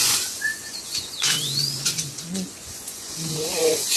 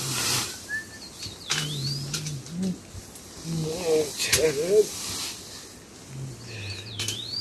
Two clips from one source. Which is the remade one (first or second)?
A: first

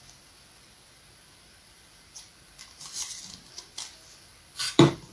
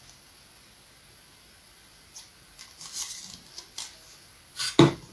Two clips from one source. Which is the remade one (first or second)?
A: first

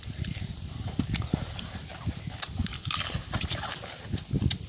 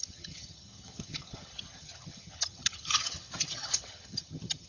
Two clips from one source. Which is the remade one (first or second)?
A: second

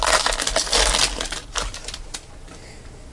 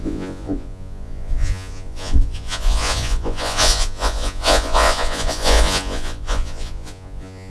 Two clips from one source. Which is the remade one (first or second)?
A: second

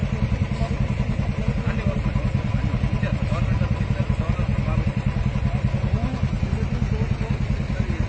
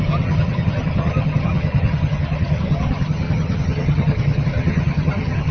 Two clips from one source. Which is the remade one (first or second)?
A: second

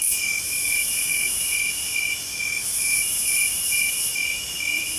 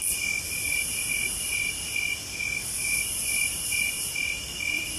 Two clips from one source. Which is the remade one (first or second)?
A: first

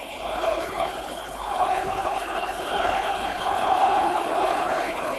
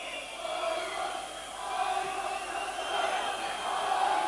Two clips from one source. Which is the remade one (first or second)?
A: first